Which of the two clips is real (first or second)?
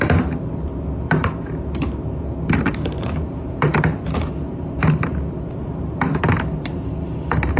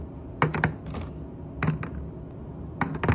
second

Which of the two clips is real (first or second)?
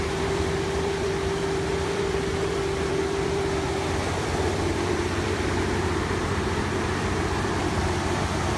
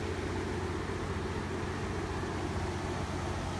second